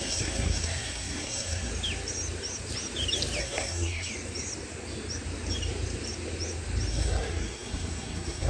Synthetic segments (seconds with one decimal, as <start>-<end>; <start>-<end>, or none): 0.0-1.7; 3.4-4.1; 6.9-8.5